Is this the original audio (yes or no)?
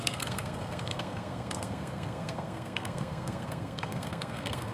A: no